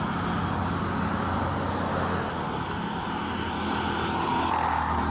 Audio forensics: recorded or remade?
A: recorded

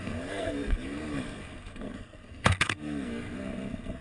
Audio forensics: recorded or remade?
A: remade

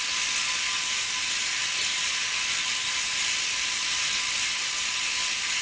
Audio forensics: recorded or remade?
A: recorded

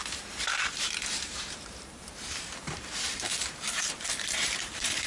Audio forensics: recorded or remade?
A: remade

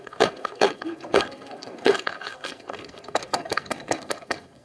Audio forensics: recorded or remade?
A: remade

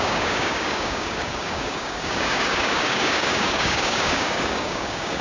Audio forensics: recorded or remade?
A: remade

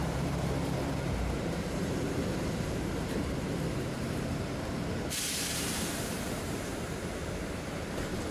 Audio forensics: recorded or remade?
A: remade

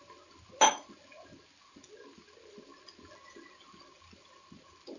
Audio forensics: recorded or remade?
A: recorded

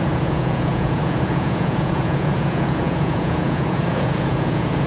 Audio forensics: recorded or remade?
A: remade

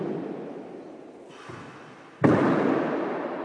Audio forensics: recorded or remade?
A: recorded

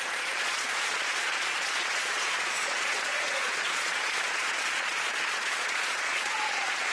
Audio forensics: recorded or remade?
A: remade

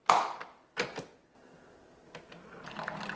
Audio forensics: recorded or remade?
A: recorded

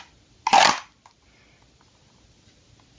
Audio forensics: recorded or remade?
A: recorded